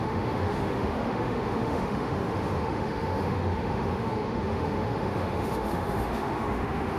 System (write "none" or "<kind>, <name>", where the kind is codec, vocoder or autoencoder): autoencoder, DAC-VAE